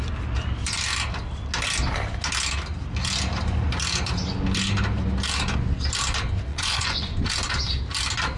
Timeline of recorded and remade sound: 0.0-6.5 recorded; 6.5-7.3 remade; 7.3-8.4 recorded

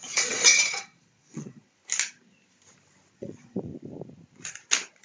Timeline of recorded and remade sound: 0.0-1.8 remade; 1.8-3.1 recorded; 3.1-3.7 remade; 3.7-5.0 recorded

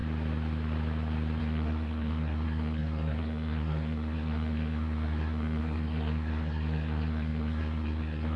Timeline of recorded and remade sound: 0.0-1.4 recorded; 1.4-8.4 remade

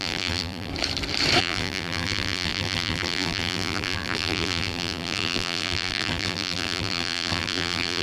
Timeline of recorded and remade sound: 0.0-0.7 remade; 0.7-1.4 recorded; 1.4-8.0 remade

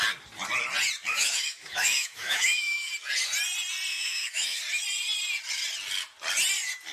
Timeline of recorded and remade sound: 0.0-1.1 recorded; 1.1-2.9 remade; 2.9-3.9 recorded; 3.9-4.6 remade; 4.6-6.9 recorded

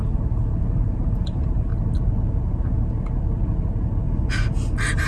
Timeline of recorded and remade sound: 0.0-1.7 remade; 1.7-5.1 recorded

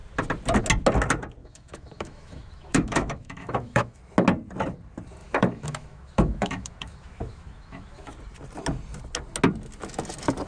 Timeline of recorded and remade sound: 0.0-1.4 recorded; 1.4-4.0 remade; 4.0-5.2 recorded; 5.2-8.1 remade; 8.1-10.5 recorded

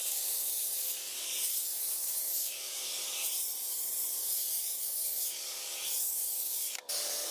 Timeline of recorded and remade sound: 0.0-3.0 remade; 3.0-4.2 recorded; 4.2-7.3 remade